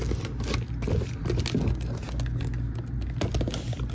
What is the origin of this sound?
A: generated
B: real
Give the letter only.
B